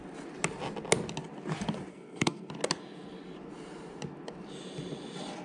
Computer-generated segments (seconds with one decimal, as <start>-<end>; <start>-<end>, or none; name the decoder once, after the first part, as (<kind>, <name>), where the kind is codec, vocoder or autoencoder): 1.9-2.5 (codec, SNAC)